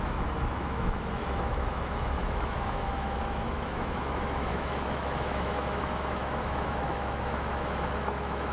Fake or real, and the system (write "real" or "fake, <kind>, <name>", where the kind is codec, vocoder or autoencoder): fake, autoencoder, DAC-VAE